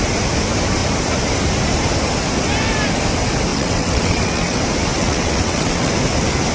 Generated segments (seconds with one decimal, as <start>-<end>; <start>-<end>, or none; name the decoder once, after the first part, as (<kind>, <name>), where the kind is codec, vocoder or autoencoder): 3.5-4.6 (vocoder, WaveNeXt); 5.0-5.9